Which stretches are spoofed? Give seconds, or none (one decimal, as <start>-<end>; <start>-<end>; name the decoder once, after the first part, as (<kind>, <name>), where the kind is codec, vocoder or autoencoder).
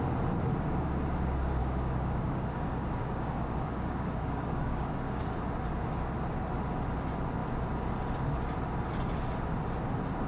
1.6-5.2 (codec, DAC)